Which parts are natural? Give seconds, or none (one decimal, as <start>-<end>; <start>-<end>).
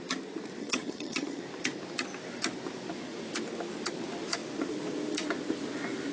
0.0-0.6; 1.4-6.1